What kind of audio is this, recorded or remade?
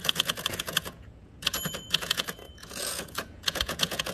remade